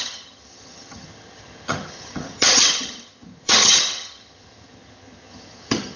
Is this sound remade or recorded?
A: remade